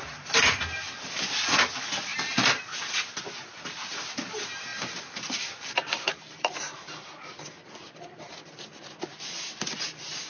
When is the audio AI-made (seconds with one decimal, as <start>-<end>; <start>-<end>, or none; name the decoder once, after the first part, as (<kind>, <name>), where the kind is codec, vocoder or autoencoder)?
2.1-2.6 (vocoder, BigVGAN v2); 4.7-8.5